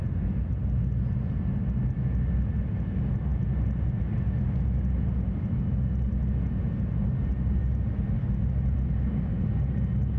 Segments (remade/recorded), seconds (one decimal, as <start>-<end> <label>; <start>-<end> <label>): 0.0-10.2 recorded